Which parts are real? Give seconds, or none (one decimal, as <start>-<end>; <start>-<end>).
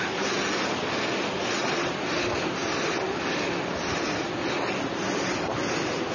0.0-6.1